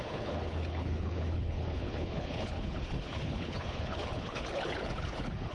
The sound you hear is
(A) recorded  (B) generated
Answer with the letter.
B